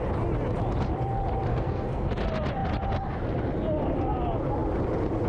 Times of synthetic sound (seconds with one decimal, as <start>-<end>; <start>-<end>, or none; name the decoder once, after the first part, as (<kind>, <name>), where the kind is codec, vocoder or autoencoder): 1.5-2.1 (codec, SNAC)